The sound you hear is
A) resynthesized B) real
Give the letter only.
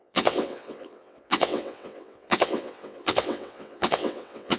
A